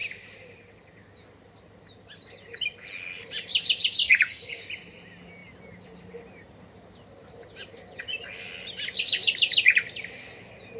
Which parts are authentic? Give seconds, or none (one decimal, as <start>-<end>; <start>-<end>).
0.0-4.0; 4.6-10.8